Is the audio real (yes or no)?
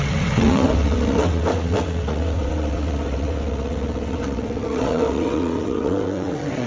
no